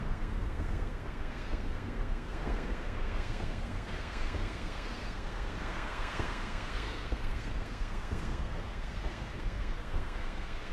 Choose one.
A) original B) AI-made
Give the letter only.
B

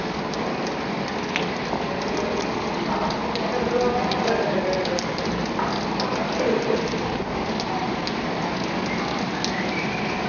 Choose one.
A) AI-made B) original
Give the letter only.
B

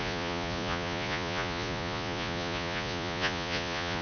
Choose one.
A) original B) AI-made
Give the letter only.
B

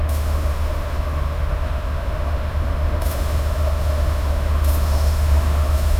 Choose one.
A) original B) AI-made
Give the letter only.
B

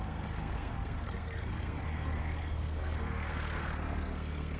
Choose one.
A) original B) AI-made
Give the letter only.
B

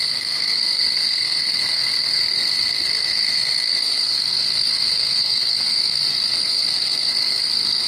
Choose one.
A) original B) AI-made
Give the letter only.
B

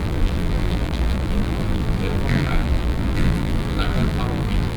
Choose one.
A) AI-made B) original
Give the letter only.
A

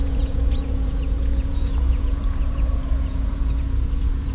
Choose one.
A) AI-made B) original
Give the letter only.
A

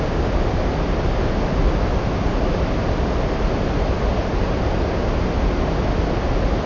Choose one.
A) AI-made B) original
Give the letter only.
B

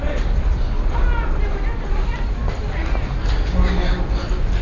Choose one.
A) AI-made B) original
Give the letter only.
B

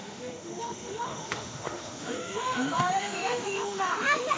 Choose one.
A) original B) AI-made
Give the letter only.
B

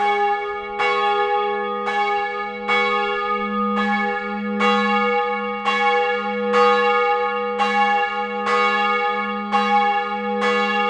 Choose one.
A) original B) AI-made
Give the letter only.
A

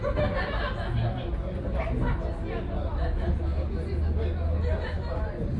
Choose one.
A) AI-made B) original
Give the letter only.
B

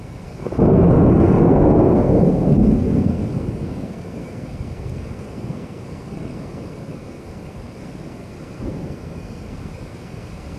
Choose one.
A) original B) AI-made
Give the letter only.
B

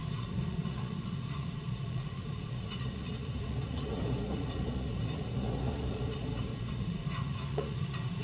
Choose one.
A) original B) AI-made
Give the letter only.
B